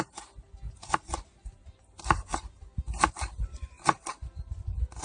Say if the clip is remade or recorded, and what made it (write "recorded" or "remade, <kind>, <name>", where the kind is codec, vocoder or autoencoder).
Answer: recorded